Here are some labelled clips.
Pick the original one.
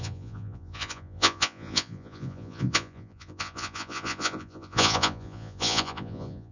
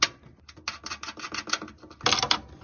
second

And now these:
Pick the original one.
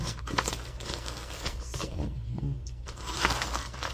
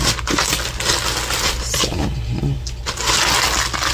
second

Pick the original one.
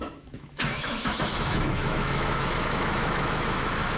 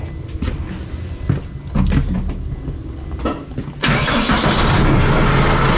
second